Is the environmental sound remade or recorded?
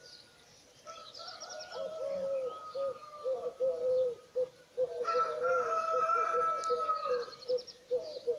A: remade